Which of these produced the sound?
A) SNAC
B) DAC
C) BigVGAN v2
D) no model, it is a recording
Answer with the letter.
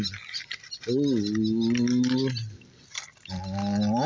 D